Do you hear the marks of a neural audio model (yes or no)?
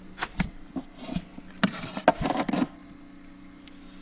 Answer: no